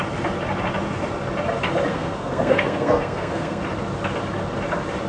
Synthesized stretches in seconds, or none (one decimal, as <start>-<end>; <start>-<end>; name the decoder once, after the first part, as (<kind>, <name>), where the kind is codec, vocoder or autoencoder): 1.9-3.6 (codec, SNAC)

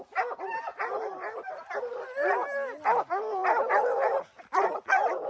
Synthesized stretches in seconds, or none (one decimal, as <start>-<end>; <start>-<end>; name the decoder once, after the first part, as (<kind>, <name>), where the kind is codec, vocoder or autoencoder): 0.7-1.7 (vocoder, BigVGAN v2); 3.4-5.3

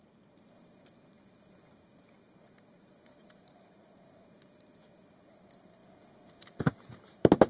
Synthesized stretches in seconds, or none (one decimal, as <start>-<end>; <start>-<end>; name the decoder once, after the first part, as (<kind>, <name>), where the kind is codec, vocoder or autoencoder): 0.0-5.8 (vocoder, BigVGAN v2)

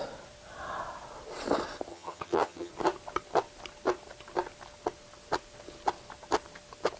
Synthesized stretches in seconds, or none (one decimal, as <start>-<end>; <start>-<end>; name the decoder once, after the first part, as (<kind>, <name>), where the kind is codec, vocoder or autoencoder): 1.9-2.7 (vocoder, HiFi-GAN)

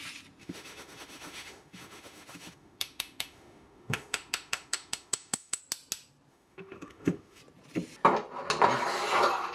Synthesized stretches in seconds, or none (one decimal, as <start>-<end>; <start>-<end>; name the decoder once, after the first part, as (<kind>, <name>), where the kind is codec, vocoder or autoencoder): 0.4-5.6 (autoencoder, DAC-VAE); 6.3-7.4